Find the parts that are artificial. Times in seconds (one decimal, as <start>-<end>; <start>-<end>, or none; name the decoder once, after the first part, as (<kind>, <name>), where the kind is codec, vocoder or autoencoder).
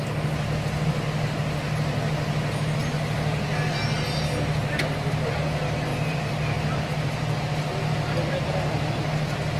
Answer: 5.9-7.4 (vocoder, BigVGAN v2)